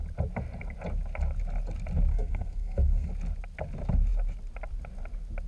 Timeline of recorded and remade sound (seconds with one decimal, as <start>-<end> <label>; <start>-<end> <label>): 0.0-2.1 recorded; 2.1-3.1 remade; 3.1-5.5 recorded